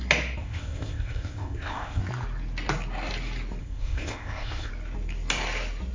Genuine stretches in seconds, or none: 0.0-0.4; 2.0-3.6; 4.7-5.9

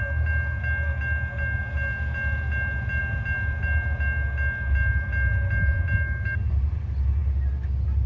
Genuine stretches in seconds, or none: 0.0-8.1

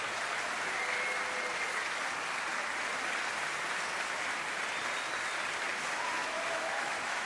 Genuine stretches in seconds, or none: 0.0-6.2

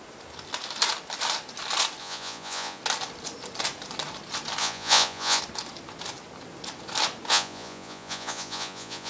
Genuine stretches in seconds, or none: 0.0-2.0; 2.8-4.6; 5.4-7.3